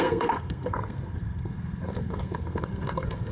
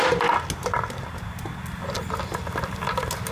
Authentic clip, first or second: second